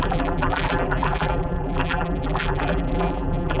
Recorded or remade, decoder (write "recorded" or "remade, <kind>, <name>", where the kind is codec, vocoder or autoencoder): remade, vocoder, BigVGAN v2